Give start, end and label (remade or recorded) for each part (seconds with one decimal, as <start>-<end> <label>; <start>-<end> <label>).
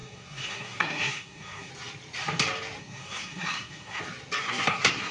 0.0-1.7 remade; 1.7-2.8 recorded; 2.8-4.0 remade; 4.0-4.4 recorded; 4.4-5.1 remade